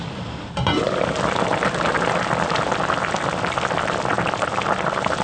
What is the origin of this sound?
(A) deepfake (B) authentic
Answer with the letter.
A